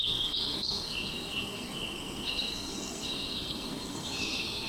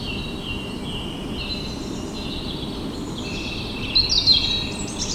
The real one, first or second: second